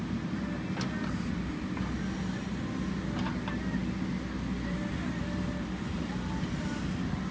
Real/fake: real